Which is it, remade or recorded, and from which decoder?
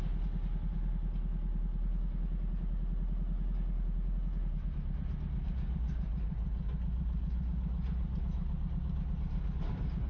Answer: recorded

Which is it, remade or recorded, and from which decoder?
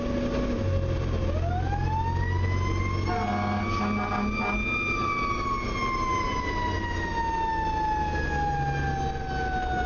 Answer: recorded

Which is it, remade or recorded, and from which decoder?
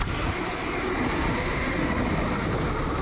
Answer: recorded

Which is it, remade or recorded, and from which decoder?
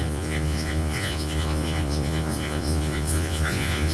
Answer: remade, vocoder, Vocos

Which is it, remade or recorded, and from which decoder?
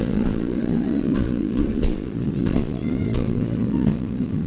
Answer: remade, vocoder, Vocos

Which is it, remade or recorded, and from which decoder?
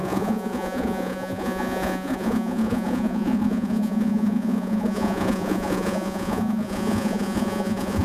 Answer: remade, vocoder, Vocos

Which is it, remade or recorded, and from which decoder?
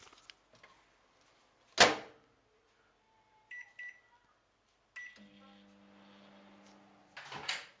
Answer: recorded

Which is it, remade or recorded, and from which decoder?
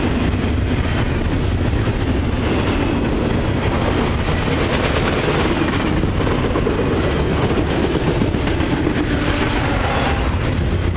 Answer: recorded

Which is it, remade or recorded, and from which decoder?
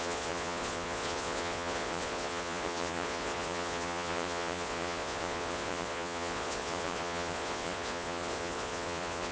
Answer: remade, vocoder, Vocos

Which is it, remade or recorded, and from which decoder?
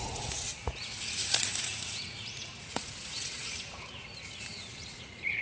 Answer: remade, vocoder, Vocos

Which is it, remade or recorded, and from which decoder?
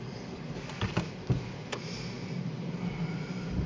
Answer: recorded